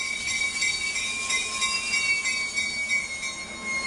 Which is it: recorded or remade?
recorded